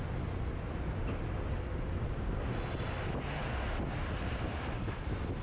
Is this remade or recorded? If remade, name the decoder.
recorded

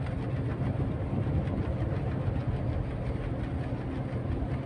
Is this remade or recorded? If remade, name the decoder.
recorded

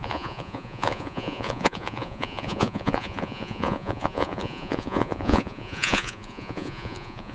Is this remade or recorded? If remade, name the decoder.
remade, vocoder, Vocos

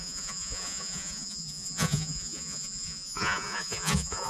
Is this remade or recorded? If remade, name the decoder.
remade, vocoder, Vocos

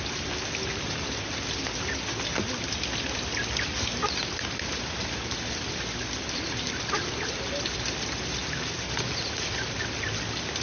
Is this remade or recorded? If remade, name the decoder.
recorded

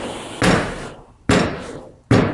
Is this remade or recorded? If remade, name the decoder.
recorded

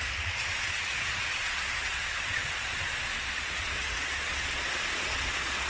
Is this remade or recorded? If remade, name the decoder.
remade, vocoder, Vocos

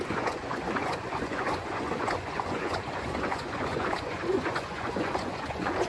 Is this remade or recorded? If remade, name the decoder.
remade, vocoder, Vocos